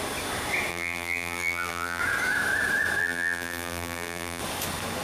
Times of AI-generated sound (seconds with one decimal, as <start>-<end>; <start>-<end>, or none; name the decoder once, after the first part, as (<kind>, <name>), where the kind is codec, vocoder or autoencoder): 0.7-2.0 (vocoder, BigVGAN v2); 3.0-4.4